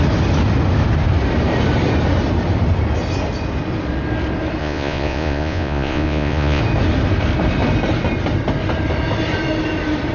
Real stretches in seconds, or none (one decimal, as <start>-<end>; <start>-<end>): 0.0-4.6; 6.6-10.1